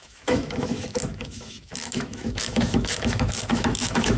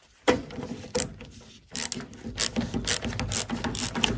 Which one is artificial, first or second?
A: first